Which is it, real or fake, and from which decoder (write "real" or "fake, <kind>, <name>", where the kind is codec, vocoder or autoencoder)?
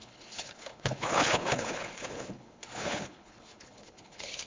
fake, codec, HILCodec